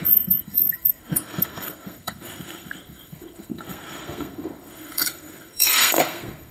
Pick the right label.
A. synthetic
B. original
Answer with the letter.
A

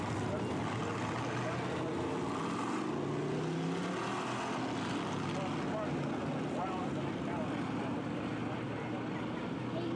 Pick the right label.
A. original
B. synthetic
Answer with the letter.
A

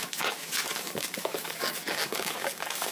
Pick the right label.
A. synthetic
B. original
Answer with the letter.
A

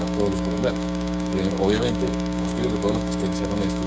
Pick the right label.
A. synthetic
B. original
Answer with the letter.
A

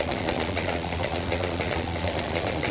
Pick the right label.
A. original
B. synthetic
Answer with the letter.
B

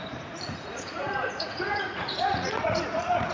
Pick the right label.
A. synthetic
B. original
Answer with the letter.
A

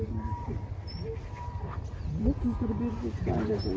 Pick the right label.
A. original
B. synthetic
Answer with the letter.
A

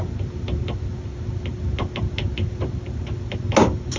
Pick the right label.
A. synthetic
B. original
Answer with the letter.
B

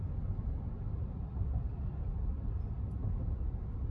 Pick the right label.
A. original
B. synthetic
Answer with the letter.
A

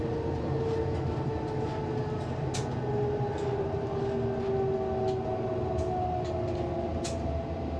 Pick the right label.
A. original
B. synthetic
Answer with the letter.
A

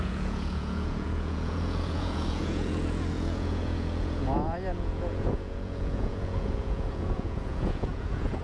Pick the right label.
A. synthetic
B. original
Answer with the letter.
A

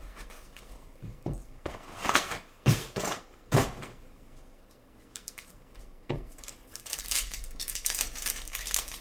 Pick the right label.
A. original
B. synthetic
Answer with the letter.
B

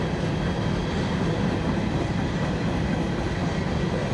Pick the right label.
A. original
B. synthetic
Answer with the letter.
A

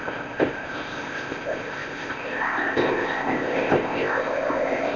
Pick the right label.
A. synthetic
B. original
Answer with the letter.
A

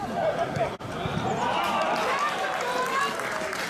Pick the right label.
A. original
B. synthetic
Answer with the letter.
A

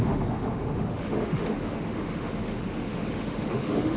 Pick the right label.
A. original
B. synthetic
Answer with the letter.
B